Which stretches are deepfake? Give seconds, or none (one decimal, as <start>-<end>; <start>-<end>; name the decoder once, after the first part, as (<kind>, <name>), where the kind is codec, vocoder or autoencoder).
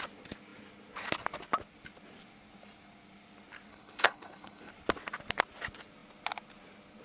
3.7-4.7 (codec, HILCodec)